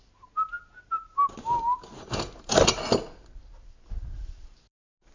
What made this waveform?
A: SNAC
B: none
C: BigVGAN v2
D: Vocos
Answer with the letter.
B